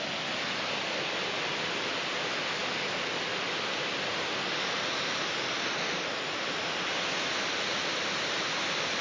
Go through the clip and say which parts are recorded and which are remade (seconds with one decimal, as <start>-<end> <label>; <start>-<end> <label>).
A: 0.0-9.0 recorded